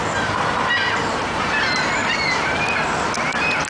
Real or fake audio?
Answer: real